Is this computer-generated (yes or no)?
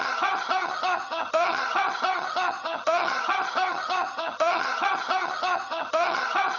yes